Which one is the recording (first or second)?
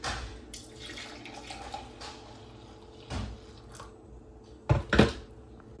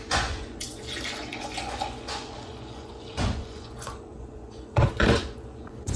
first